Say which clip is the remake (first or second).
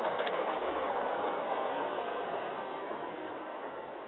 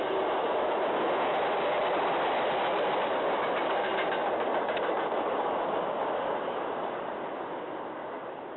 first